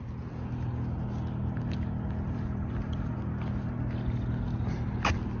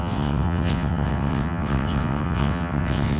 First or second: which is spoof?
second